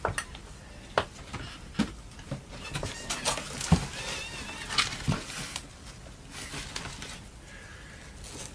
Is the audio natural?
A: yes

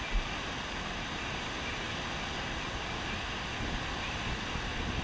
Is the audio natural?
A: yes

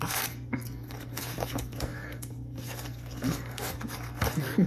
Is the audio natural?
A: no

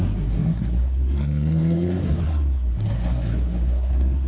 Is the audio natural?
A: no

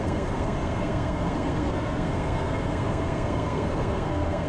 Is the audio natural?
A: no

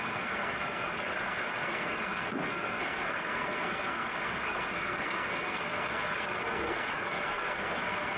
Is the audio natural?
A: no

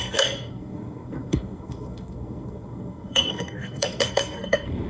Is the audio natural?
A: no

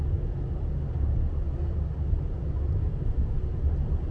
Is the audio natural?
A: yes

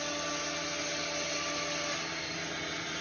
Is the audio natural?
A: yes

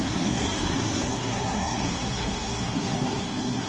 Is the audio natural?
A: no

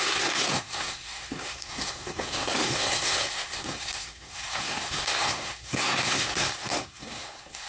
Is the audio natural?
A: no